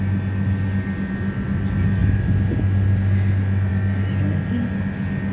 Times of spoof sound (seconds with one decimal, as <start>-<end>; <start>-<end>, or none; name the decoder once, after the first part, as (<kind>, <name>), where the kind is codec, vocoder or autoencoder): none